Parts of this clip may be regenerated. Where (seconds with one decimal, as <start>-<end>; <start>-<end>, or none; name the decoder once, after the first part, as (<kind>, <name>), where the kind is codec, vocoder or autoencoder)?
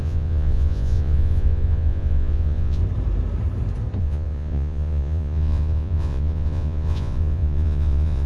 0.0-2.8 (vocoder, Vocos); 4.0-8.3